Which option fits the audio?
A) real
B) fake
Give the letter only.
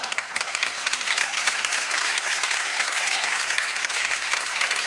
B